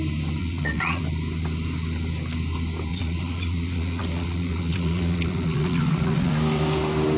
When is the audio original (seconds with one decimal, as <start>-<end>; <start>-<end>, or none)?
0.0-0.4; 1.0-2.9; 6.3-7.2

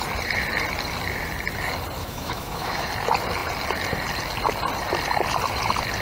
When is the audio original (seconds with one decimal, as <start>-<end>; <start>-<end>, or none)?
0.0-2.0; 2.9-6.0

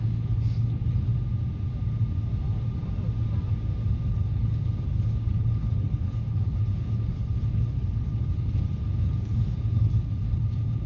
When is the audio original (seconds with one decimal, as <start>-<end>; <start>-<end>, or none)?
1.1-4.1

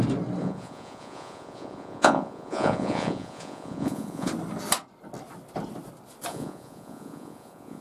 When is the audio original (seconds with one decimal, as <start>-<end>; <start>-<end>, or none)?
0.0-0.4; 4.3-6.3